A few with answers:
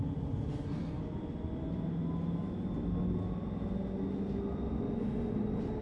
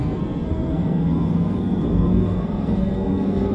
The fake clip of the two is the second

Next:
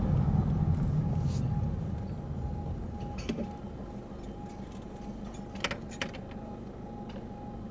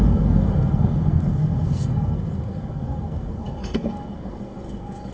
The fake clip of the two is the second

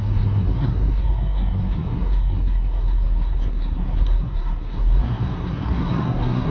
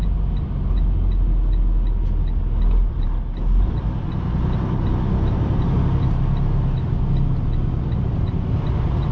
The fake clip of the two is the first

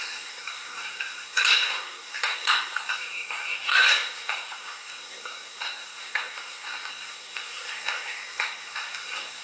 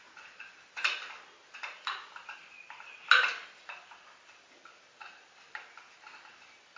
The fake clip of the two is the first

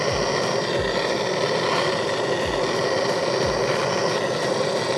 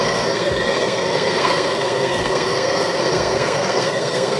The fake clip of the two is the second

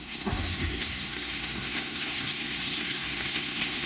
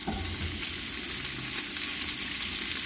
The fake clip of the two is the first